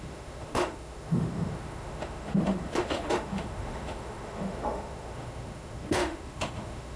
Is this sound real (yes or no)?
no